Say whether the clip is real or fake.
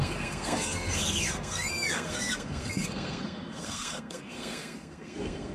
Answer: fake